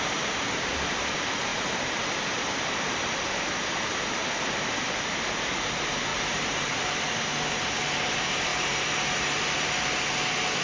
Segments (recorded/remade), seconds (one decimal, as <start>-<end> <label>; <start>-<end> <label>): 0.0-8.5 remade; 8.5-10.6 recorded